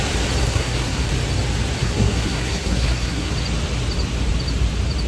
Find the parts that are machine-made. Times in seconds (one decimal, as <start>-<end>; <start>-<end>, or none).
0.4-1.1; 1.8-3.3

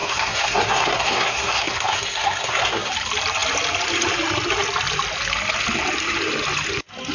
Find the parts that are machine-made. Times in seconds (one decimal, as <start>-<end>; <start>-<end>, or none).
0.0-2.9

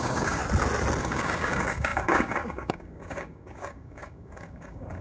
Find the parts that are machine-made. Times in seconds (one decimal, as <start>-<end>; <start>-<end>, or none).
0.0-0.4; 1.0-5.0

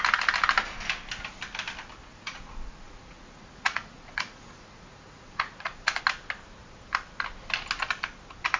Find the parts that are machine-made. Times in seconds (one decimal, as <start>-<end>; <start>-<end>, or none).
2.1-6.0